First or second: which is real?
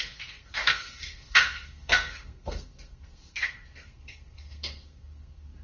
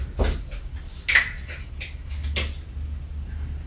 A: second